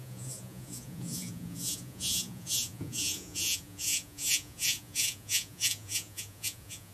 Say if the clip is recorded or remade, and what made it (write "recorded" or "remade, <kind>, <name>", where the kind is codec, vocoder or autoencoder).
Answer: remade, vocoder, Vocos